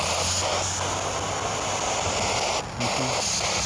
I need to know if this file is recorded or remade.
recorded